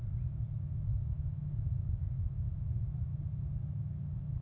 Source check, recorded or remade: recorded